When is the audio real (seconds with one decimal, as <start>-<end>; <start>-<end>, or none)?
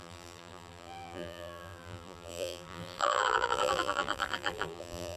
none